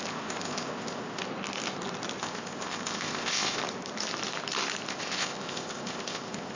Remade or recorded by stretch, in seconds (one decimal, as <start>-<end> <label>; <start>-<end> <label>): 0.0-1.2 remade; 1.2-2.2 recorded; 2.2-3.6 remade; 3.6-4.9 recorded; 4.9-6.6 remade